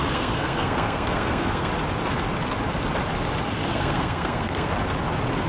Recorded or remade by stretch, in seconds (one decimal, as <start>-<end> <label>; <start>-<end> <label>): 0.0-1.7 remade; 1.7-3.7 recorded; 3.7-4.7 remade; 4.7-5.5 recorded